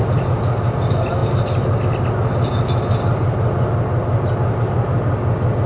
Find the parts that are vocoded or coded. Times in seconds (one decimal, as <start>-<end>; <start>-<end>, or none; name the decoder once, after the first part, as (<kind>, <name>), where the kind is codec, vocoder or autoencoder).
none